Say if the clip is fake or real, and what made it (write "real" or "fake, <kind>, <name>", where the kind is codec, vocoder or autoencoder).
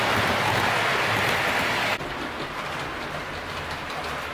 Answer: real